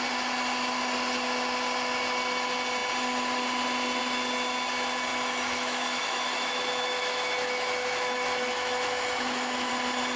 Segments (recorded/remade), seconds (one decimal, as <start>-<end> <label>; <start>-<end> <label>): 0.0-5.1 recorded; 5.1-9.7 remade; 9.7-10.2 recorded